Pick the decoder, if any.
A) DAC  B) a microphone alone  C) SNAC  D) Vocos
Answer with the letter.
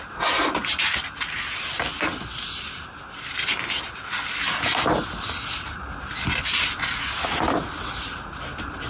B